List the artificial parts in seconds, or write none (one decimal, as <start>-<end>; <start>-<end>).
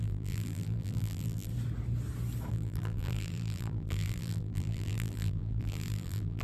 0.0-1.5; 2.5-6.4